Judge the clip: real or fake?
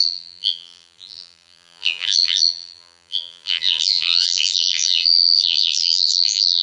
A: fake